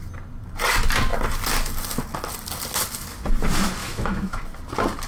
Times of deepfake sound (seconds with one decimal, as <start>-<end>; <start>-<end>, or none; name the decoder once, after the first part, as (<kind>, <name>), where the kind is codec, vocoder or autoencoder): 3.8-4.4 (autoencoder, DAC-VAE)